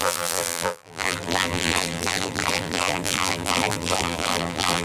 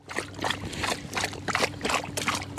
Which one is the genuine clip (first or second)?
second